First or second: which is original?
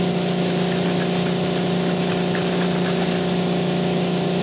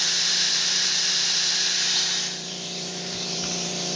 first